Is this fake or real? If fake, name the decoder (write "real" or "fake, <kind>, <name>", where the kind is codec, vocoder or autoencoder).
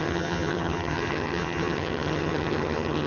fake, vocoder, HiFi-GAN